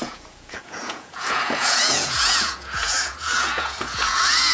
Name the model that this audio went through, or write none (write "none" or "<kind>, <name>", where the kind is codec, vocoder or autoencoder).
vocoder, Vocos